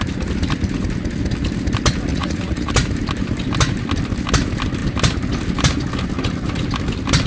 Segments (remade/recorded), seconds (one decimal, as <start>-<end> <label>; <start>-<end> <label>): 0.0-2.1 recorded; 2.1-2.7 remade; 2.7-7.3 recorded